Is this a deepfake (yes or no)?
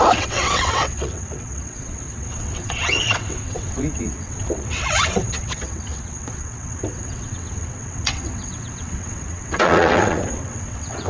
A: yes